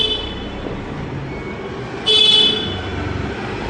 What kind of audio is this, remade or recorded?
recorded